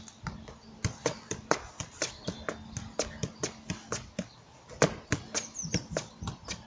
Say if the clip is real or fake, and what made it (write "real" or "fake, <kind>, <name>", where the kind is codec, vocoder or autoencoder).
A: real